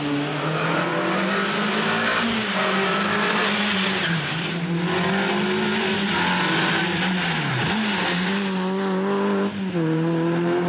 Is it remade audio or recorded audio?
recorded